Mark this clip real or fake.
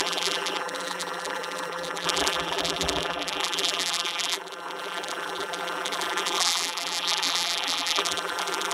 fake